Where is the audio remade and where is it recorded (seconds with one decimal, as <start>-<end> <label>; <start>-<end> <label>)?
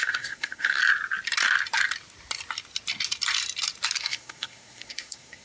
0.0-0.8 remade; 0.8-4.0 recorded; 4.0-5.4 remade